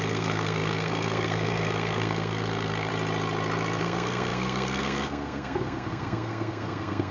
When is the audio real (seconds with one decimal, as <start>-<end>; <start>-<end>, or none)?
2.9-3.8